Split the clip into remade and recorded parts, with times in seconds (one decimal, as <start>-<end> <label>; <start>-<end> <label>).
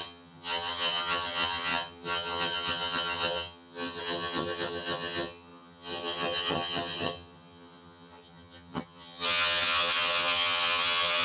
0.0-11.2 remade